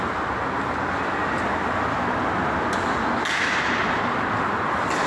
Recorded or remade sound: recorded